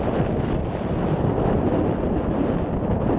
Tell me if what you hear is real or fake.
real